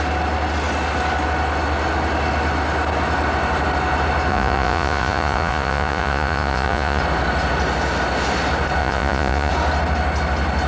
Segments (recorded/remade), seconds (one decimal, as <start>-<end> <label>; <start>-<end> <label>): 0.0-4.3 recorded; 4.3-7.0 remade; 7.0-8.8 recorded; 8.8-9.5 remade; 9.5-10.7 recorded